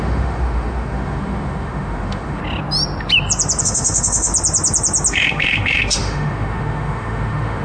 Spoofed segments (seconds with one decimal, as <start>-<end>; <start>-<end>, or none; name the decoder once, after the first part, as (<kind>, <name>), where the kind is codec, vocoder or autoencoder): 0.0-2.4 (autoencoder, DAC-VAE); 3.6-4.3; 5.1-7.6